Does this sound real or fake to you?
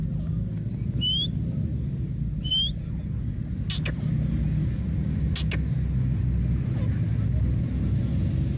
real